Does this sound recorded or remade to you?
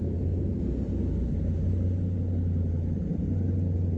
recorded